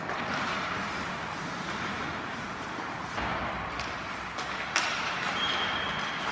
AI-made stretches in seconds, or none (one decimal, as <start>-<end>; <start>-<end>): 0.0-3.3; 4.9-6.3